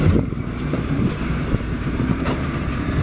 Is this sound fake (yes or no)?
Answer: yes